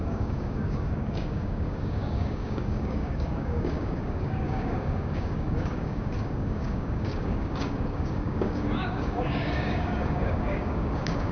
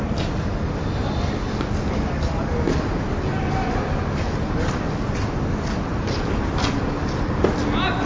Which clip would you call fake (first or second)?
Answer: first